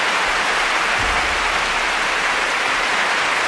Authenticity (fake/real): fake